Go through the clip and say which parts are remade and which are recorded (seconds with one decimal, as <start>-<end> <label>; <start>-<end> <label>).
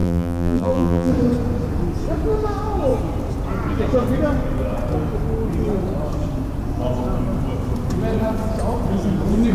0.0-1.1 remade; 1.1-9.5 recorded